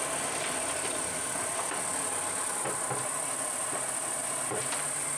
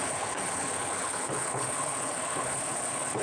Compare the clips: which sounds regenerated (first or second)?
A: second